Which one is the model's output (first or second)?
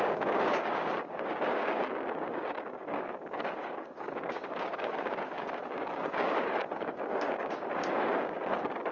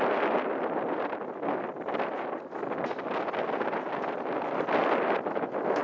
first